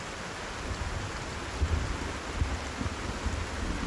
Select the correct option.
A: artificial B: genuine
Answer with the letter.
B